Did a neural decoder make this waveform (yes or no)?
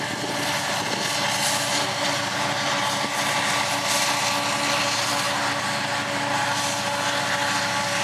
no